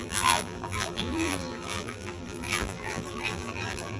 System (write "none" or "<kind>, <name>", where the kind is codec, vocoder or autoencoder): vocoder, BigVGAN v2